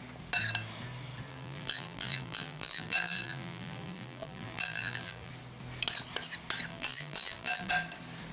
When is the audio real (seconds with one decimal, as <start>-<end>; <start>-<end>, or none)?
0.0-1.3; 5.3-6.7; 7.7-8.3